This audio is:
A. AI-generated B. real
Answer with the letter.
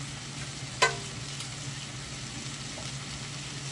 B